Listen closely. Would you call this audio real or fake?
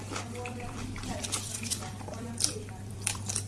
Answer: fake